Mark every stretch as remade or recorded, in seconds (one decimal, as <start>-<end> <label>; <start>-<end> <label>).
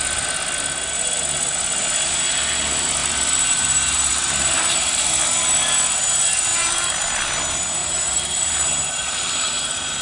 0.0-3.0 recorded; 3.0-5.1 remade; 5.1-6.5 recorded; 6.5-7.1 remade; 7.1-7.8 recorded; 7.8-9.2 remade; 9.2-10.0 recorded